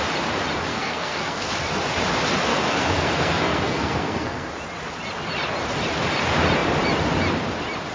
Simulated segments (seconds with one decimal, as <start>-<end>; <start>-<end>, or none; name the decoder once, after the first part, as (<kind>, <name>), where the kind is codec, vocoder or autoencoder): 0.7-1.5 (codec, SNAC); 2.5-4.5